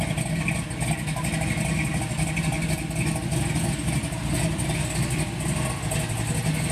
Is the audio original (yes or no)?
yes